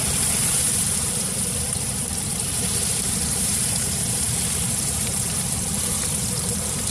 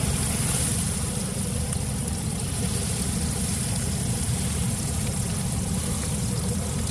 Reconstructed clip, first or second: first